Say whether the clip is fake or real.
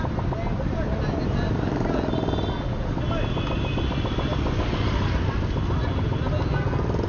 real